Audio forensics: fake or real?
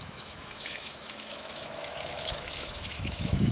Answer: fake